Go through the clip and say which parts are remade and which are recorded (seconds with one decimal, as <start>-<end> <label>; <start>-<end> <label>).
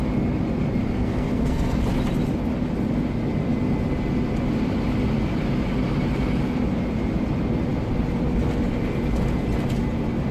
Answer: 0.0-0.8 recorded; 0.8-1.8 remade; 1.8-10.3 recorded